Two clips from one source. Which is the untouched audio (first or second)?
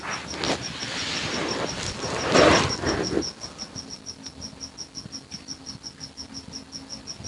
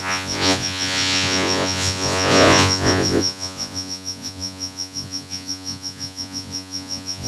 first